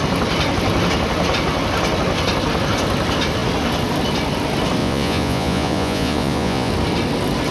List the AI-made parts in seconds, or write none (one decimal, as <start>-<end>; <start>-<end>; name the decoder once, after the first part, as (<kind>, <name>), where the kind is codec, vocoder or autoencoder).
4.8-6.7 (vocoder, Vocos)